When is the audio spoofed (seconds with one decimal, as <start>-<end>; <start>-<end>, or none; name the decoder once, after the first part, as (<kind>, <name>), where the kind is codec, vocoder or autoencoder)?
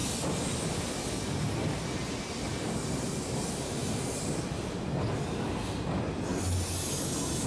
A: none